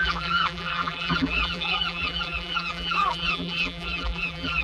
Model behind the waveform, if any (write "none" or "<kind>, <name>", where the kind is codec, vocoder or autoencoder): vocoder, BigVGAN v2